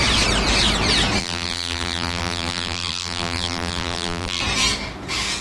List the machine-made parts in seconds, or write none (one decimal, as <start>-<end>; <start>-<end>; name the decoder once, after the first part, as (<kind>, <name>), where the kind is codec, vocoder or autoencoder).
1.2-4.4 (vocoder, BigVGAN v2)